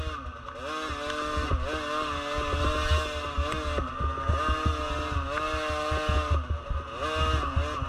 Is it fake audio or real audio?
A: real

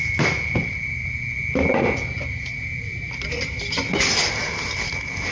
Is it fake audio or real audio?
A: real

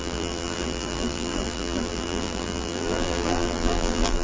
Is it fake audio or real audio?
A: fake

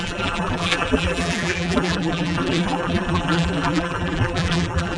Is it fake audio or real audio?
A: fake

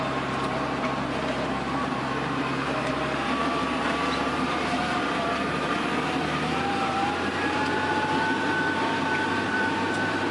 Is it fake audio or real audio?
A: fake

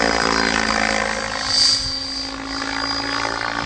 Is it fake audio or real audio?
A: real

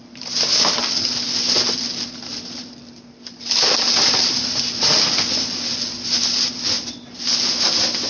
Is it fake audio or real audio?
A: real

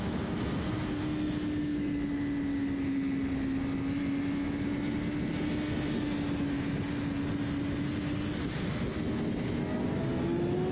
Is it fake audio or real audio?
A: real